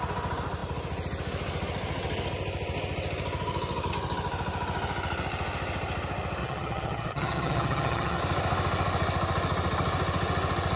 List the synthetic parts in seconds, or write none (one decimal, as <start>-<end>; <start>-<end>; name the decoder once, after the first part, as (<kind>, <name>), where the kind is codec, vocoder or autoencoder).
6.4-8.2 (vocoder, HiFi-GAN)